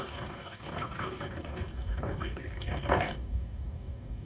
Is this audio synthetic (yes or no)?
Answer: yes